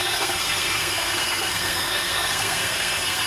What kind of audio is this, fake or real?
fake